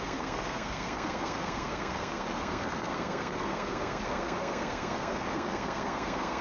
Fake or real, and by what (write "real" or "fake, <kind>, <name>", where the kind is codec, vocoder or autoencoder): fake, codec, SNAC